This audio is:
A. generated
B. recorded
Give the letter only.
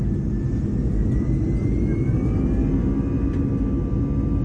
B